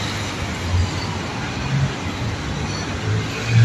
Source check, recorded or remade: recorded